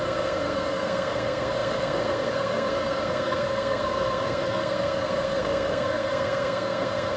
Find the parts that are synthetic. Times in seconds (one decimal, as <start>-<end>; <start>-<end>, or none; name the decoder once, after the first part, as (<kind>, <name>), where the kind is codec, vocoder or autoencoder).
0.0-7.2 (codec, SNAC)